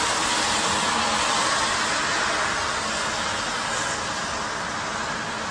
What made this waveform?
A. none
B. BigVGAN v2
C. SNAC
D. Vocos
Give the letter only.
A